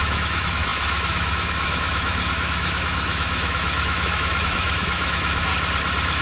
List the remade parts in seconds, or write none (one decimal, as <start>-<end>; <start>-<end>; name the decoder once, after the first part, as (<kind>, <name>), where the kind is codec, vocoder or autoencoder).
0.0-5.5 (autoencoder, DAC-VAE)